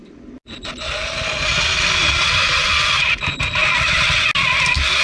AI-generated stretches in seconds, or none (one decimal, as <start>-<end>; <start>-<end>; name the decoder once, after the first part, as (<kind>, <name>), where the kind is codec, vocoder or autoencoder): 2.6-3.4 (vocoder, BigVGAN v2)